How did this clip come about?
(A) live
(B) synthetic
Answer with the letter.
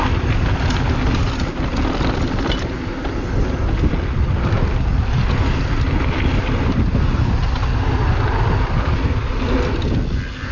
A